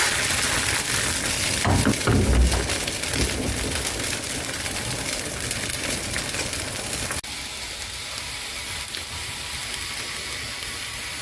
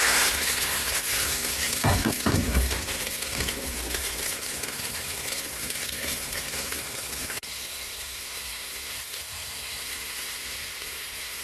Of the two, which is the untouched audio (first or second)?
first